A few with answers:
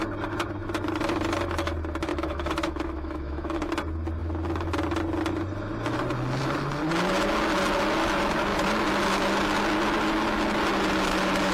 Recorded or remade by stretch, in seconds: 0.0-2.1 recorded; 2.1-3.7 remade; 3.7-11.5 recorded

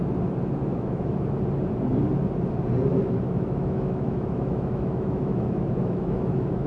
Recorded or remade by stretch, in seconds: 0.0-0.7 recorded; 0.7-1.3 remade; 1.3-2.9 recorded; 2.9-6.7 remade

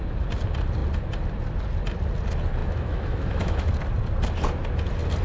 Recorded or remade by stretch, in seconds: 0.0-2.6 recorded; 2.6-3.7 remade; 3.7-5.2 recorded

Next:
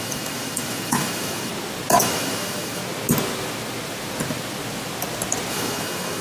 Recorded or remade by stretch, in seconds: 0.0-1.5 remade; 1.5-2.0 recorded; 2.0-2.8 remade; 2.8-5.5 recorded; 5.5-6.2 remade

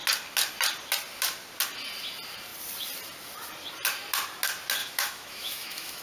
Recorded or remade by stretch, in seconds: 0.0-4.8 recorded; 4.8-6.0 remade

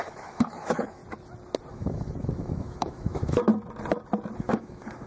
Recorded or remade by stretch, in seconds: 0.0-1.0 remade; 1.0-1.7 recorded; 1.7-3.5 remade; 3.5-4.4 recorded; 4.4-5.1 remade